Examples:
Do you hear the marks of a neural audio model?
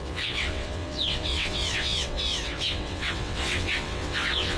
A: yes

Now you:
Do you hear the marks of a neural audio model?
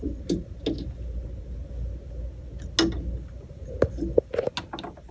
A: no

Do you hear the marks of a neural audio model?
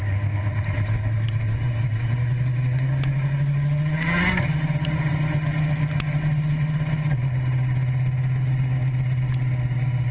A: no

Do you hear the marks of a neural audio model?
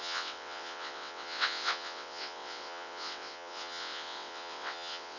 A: yes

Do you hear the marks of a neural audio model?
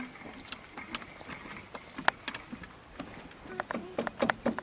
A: no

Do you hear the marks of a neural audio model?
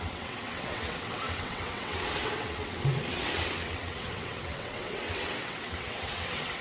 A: yes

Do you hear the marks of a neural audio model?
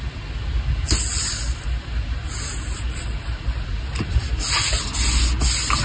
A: no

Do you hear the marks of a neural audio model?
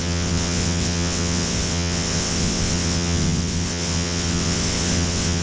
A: yes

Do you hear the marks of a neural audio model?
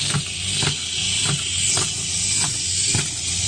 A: no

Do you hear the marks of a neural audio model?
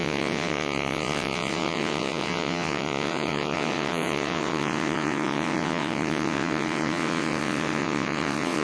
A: yes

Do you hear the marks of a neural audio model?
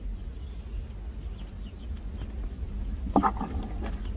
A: no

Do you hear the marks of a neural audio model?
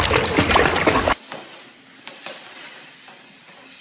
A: no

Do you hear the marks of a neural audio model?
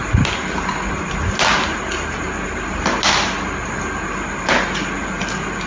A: no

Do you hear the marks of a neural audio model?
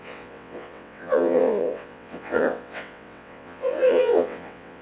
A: yes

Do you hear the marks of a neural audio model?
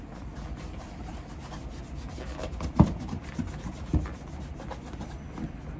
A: no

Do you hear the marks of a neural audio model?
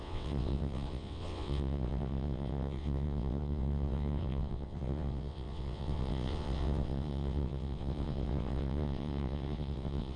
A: yes